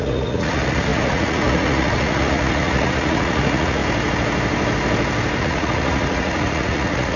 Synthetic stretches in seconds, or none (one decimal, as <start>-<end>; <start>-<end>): 0.0-3.8; 5.4-7.2